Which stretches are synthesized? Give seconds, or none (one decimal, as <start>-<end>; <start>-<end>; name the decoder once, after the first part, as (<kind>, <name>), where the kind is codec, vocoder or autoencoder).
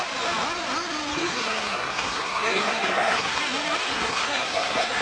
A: 1.1-3.4 (codec, SNAC); 3.9-5.0